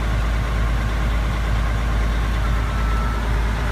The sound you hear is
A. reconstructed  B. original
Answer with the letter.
B